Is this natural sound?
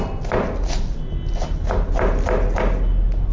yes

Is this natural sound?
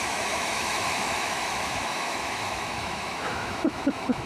no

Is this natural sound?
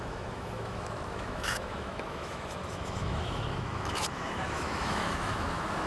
no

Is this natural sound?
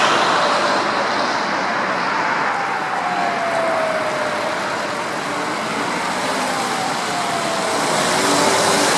yes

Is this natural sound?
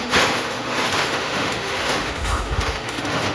no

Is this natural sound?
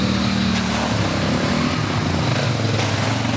yes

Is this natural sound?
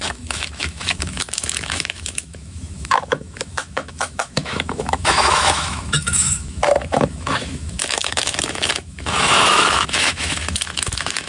no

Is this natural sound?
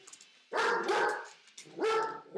yes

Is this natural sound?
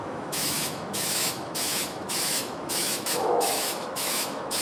no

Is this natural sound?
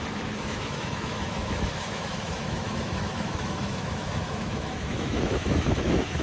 no